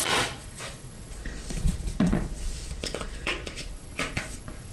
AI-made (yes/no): yes